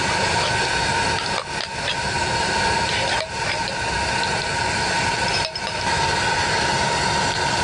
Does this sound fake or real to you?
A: real